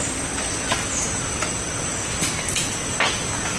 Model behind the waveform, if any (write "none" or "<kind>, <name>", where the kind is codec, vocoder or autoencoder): none